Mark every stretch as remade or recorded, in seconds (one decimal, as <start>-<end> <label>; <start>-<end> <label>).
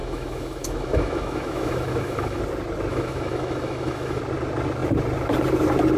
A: 0.0-2.4 remade; 2.4-2.9 recorded; 2.9-4.2 remade; 4.2-6.0 recorded